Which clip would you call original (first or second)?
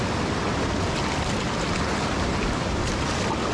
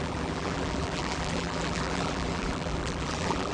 first